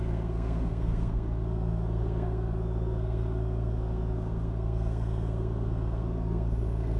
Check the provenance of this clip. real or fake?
fake